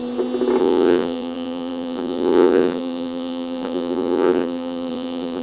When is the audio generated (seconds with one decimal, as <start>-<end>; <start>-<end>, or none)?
0.6-5.4